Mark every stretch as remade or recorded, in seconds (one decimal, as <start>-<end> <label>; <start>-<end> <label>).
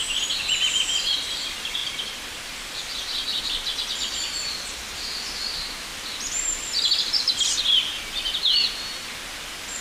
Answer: 0.0-1.8 recorded; 1.8-3.4 remade; 3.4-5.9 recorded; 5.9-7.3 remade; 7.3-9.8 recorded